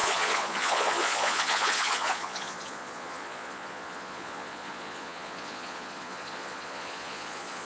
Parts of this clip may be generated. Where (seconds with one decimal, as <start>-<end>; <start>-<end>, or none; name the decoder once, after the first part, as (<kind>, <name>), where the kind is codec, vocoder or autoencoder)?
0.0-7.6 (vocoder, Vocos)